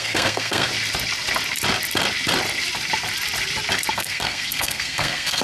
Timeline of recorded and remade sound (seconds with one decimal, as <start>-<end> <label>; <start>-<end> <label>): 0.0-0.7 remade; 0.7-3.9 recorded; 3.9-5.4 remade